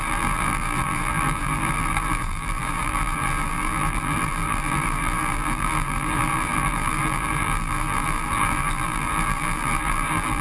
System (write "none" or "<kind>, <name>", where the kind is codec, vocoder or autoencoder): vocoder, BigVGAN v2